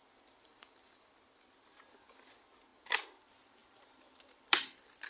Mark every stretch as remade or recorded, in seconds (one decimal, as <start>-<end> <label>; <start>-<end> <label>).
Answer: 0.0-3.6 recorded; 3.6-5.1 remade